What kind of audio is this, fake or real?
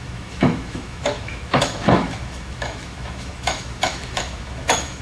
fake